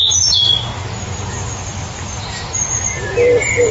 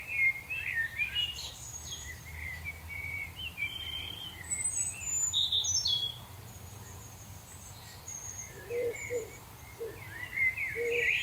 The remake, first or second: second